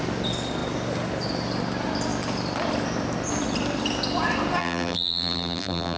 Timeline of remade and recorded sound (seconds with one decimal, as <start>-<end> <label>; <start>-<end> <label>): 0.0-4.6 recorded; 4.6-6.0 remade